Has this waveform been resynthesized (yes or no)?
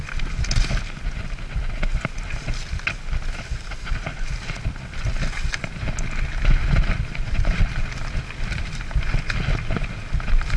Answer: no